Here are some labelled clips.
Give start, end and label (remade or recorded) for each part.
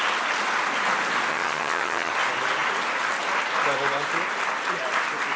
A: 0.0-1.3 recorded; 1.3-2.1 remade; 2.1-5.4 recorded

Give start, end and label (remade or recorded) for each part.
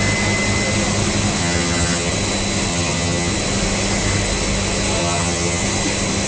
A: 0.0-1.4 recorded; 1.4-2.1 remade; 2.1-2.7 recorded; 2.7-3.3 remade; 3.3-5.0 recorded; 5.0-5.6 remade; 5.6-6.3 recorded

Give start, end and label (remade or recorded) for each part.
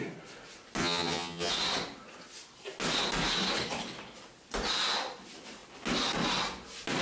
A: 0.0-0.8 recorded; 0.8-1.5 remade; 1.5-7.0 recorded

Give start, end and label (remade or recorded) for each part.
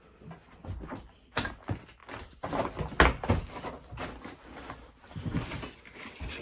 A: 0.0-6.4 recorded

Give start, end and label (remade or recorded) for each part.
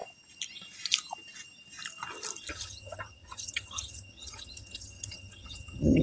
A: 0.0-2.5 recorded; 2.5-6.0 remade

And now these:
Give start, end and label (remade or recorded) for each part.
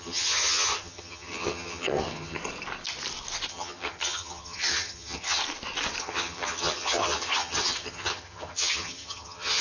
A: 0.0-2.4 remade; 2.4-3.5 recorded; 3.5-5.4 remade; 5.4-6.0 recorded; 6.0-9.6 remade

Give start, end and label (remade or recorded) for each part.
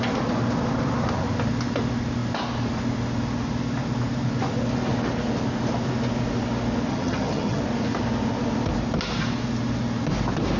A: 0.0-6.9 recorded; 6.9-7.6 remade; 7.6-10.6 recorded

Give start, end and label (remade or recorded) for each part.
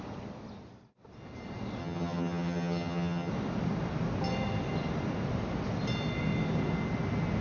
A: 0.0-1.8 recorded; 1.8-3.3 remade; 3.3-7.4 recorded